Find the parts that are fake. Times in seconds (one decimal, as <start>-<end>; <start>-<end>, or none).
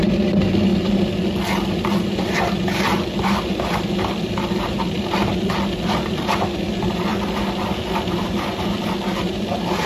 0.0-0.7; 2.1-7.1; 9.4-9.9